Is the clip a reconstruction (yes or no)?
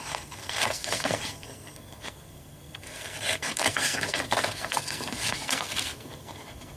yes